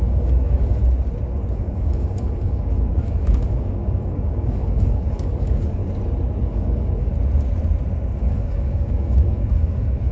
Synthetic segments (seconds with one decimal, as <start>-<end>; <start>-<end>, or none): 0.0-0.8; 1.5-5.8; 6.4-7.1; 8.2-10.1